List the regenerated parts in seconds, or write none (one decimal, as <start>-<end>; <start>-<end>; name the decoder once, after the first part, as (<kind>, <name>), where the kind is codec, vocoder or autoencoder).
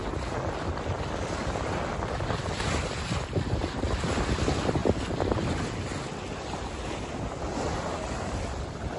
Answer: none